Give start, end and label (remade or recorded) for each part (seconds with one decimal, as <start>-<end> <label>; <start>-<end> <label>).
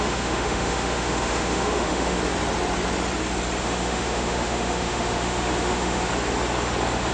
0.0-2.2 remade; 2.2-3.6 recorded; 3.6-6.1 remade; 6.1-7.1 recorded